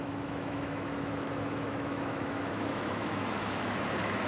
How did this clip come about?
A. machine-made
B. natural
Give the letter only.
A